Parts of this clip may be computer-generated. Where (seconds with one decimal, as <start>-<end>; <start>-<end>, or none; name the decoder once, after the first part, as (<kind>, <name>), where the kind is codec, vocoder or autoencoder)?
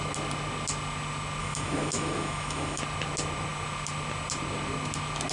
1.4-2.8 (autoencoder, DAC-VAE)